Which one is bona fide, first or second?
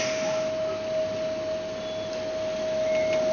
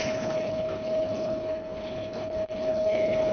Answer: first